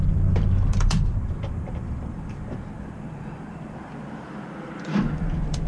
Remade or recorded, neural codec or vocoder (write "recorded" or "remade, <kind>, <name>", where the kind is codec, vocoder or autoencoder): remade, vocoder, BigVGAN v2